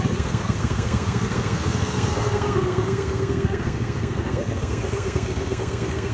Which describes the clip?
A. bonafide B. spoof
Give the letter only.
B